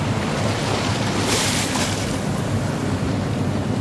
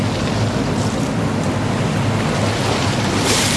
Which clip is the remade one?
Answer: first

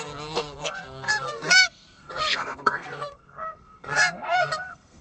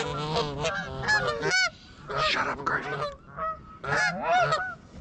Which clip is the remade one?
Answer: first